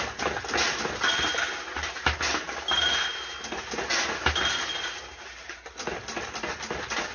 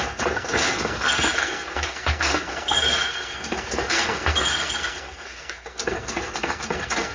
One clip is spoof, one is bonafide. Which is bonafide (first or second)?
first